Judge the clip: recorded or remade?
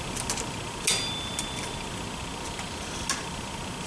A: recorded